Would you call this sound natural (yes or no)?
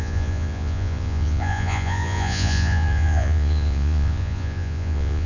no